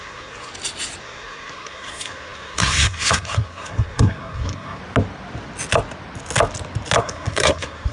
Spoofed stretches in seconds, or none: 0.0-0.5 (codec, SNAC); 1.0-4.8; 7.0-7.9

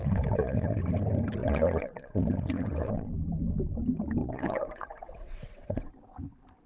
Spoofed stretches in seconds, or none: 0.0-0.8 (vocoder, WaveNeXt); 1.4-3.1; 4.2-5.9

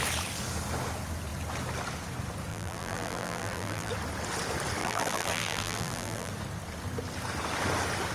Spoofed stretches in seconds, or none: 2.5-3.9 (vocoder, BigVGAN v2); 4.8-6.3

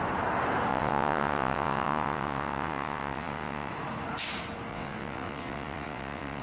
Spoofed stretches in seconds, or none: 0.7-3.7 (vocoder, WaveNeXt); 4.7-6.4

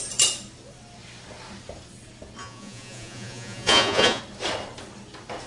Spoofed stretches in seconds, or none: 2.4-4.2 (vocoder, Vocos)

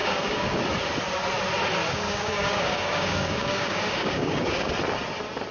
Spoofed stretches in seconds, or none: 0.0-0.6 (codec, DAC); 1.8-4.7